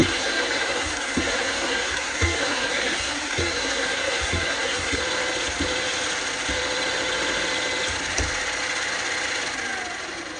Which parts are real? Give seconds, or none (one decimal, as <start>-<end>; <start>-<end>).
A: 5.0-10.4